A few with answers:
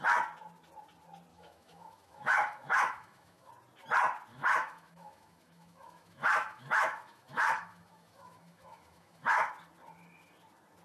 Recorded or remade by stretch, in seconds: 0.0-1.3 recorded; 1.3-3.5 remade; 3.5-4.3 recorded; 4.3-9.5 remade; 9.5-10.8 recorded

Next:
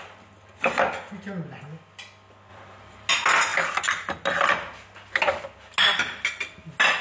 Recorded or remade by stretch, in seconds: 0.0-2.5 recorded; 2.5-3.1 remade; 3.1-7.0 recorded